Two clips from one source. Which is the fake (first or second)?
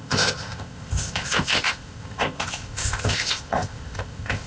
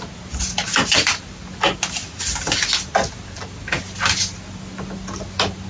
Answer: first